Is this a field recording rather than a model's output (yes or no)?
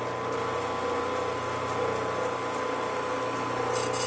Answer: yes